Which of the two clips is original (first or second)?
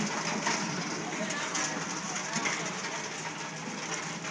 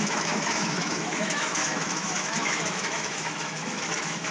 first